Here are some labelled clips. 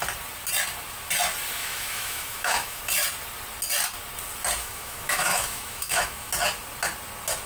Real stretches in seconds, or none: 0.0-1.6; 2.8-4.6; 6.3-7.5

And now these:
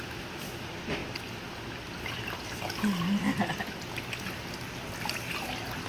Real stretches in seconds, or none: 0.0-5.9

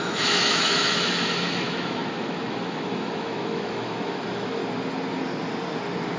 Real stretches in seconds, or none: 4.6-6.2